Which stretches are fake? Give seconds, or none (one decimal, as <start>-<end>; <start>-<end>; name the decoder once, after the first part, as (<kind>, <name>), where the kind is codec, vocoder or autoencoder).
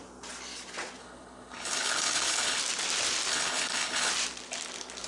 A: 1.0-2.6 (codec, HILCodec); 3.3-4.1